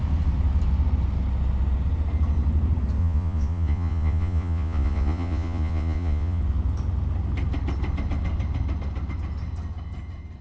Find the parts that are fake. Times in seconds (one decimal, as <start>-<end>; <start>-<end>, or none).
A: 3.0-6.4